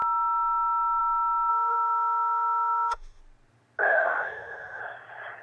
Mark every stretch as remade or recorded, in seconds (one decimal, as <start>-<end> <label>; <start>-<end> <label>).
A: 0.0-1.5 recorded; 1.5-3.2 remade; 3.2-3.8 recorded; 3.8-4.8 remade; 4.8-5.4 recorded